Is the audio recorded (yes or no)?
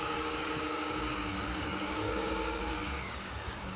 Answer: no